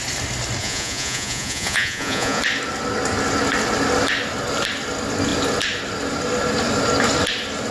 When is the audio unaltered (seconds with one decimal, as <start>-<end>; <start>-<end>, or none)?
0.0-0.6; 2.4-7.7